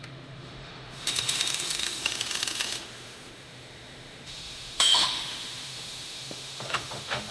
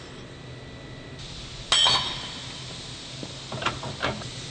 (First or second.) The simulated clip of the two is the first